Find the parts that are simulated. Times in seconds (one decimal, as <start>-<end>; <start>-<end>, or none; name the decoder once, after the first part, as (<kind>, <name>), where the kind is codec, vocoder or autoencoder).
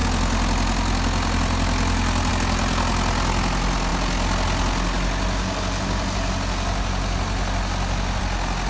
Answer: none